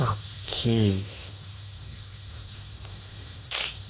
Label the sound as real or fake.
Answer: fake